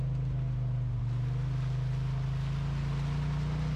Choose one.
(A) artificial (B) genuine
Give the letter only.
B